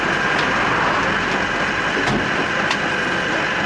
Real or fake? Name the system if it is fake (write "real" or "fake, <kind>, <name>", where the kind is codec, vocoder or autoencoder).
real